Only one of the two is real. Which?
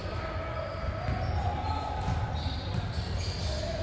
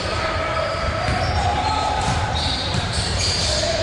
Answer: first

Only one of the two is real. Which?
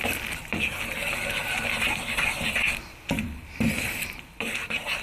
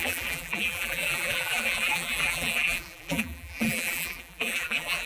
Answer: first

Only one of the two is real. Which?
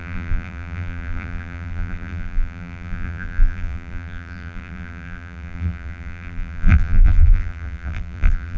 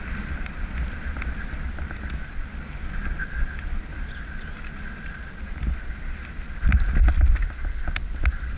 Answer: second